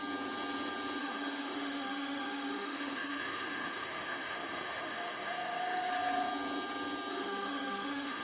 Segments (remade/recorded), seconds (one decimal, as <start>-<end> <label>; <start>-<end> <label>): 0.0-1.0 recorded; 1.0-5.9 remade; 5.9-7.1 recorded; 7.1-8.2 remade